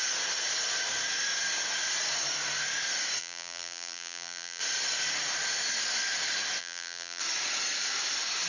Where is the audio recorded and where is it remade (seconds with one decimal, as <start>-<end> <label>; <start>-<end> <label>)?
0.0-3.2 recorded; 3.2-4.6 remade; 4.6-6.6 recorded; 6.6-7.2 remade; 7.2-8.5 recorded